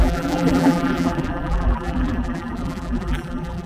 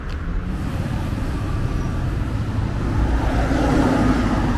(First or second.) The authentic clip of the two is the second